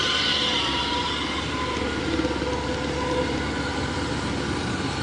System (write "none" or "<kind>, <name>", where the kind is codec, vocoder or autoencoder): none